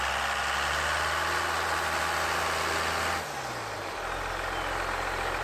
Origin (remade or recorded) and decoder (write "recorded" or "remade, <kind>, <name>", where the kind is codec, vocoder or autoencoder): recorded